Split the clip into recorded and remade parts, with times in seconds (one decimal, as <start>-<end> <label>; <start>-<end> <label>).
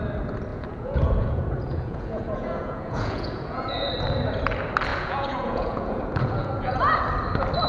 0.0-0.5 recorded; 0.5-3.9 remade; 3.9-4.9 recorded; 4.9-6.8 remade; 6.8-7.7 recorded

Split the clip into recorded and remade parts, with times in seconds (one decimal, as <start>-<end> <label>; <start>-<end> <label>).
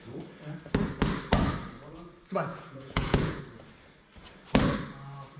0.0-2.5 recorded; 2.5-3.4 remade; 3.4-5.4 recorded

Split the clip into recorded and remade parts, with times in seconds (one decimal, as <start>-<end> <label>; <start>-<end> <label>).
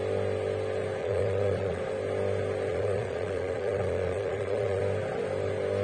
0.0-1.0 recorded; 1.0-1.8 remade; 1.8-2.7 recorded; 2.7-4.8 remade; 4.8-5.8 recorded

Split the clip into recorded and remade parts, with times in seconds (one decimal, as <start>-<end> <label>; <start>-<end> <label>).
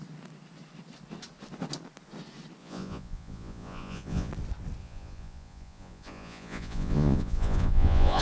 0.0-2.6 recorded; 2.6-4.3 remade; 4.3-4.8 recorded; 4.8-8.2 remade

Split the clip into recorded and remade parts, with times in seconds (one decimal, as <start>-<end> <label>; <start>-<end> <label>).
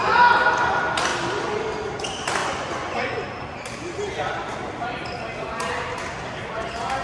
0.0-2.4 recorded; 2.4-3.1 remade; 3.1-7.0 recorded